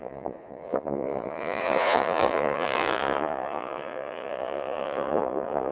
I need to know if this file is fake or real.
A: fake